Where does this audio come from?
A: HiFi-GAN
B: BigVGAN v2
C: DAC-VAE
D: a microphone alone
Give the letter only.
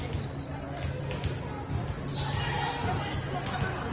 D